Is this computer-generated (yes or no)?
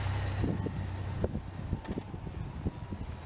no